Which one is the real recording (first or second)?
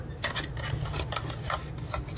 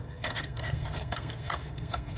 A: first